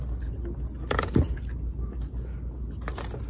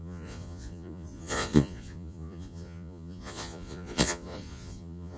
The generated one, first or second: second